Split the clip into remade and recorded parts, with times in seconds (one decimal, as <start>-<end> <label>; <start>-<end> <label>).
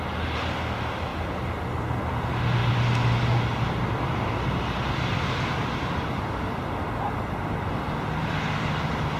0.0-9.2 recorded